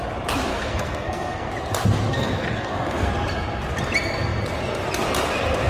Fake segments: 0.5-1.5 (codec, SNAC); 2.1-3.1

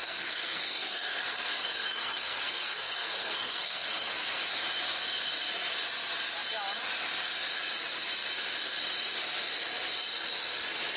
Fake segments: 0.0-4.4 (codec, SNAC)

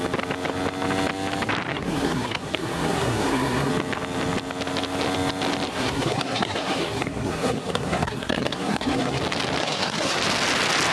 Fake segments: 1.7-3.7 (codec, SNAC); 5.7-9.2; 9.6-10.2

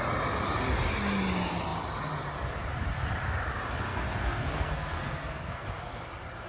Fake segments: 3.9-6.0 (codec, SNAC)

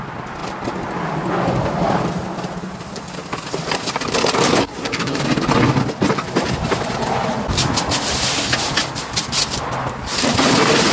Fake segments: 4.6-5.2 (codec, SNAC)

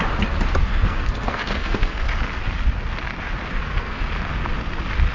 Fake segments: 0.6-2.1 (codec, SNAC); 3.5-4.0

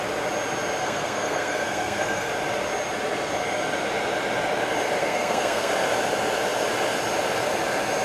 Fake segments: 0.8-2.3 (codec, SNAC); 5.0-5.7